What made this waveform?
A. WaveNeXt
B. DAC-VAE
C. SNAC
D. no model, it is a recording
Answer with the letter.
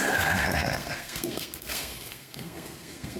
C